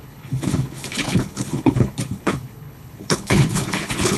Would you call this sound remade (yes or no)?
yes